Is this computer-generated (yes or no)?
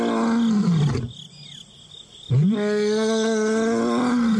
no